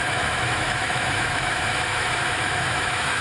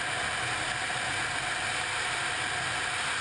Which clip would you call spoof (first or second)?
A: first